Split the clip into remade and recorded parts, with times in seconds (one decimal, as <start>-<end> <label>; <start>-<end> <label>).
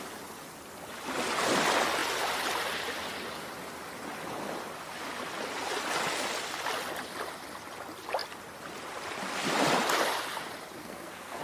0.0-10.8 recorded; 10.8-11.4 remade